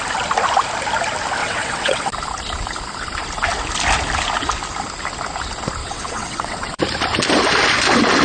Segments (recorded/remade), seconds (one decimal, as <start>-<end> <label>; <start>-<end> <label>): 0.0-1.4 recorded; 1.4-2.1 remade; 2.1-5.8 recorded; 5.8-6.8 remade; 6.8-8.2 recorded